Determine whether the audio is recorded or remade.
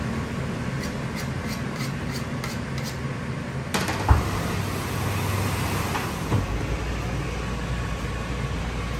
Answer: recorded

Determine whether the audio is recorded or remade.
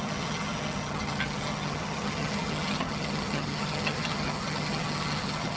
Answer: remade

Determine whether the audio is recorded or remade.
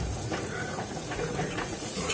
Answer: remade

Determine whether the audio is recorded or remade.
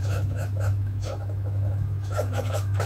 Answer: remade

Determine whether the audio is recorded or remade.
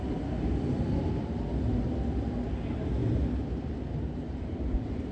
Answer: recorded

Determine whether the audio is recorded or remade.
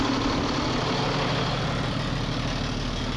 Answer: recorded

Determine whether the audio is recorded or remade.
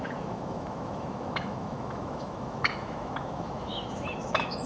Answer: remade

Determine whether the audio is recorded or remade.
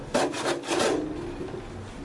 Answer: recorded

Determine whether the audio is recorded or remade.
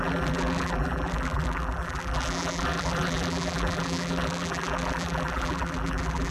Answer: remade